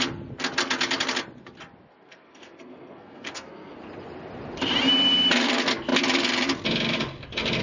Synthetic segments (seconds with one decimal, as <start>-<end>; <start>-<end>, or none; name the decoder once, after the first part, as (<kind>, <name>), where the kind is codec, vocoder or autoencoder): 1.9-3.8 (codec, SNAC)